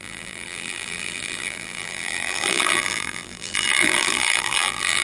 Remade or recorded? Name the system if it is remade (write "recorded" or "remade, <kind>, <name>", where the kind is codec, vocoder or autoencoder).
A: remade, vocoder, BigVGAN v2